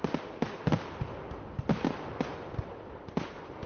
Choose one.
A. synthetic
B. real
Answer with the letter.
B